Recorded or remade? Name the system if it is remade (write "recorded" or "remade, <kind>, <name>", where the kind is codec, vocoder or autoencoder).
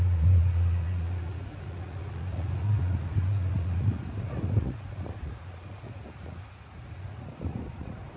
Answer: remade, vocoder, Vocos